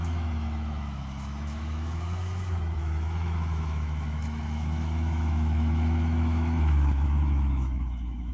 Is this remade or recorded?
remade